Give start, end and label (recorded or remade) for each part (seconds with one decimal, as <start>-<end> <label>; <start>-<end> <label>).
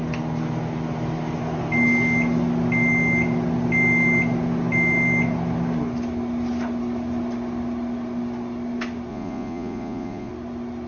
0.0-9.1 recorded; 9.1-10.3 remade; 10.3-10.9 recorded